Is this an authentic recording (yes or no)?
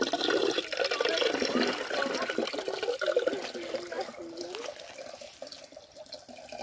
yes